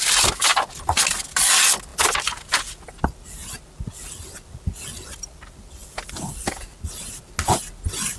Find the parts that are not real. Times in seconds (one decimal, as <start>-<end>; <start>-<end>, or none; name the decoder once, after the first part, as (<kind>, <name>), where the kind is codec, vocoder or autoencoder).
none